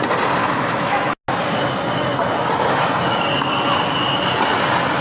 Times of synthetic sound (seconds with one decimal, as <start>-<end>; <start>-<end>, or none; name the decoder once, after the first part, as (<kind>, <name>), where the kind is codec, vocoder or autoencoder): 0.4-1.0 (autoencoder, DAC-VAE)